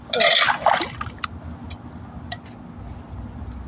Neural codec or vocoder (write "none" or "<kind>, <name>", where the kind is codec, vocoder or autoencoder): none